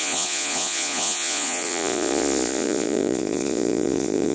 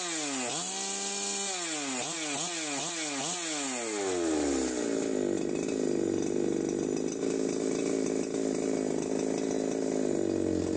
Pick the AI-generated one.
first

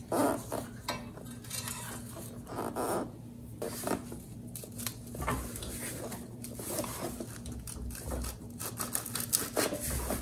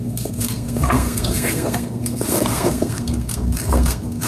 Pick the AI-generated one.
second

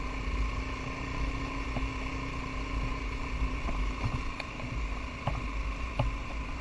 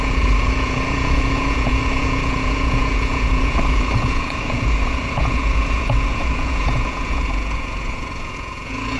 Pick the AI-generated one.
second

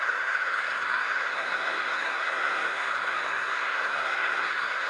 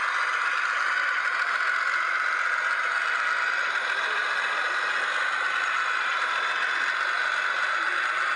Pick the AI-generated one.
first